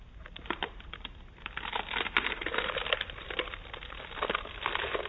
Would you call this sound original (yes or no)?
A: yes